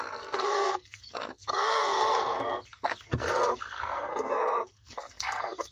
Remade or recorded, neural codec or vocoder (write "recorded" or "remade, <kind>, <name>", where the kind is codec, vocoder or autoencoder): remade, codec, SNAC